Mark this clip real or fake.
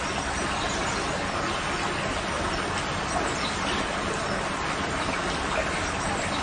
real